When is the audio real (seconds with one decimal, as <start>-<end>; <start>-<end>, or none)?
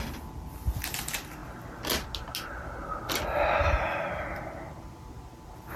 0.0-5.8